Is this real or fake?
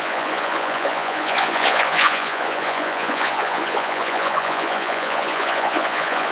fake